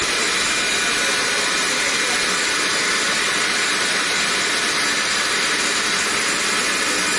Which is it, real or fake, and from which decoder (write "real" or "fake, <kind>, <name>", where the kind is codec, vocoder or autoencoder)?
real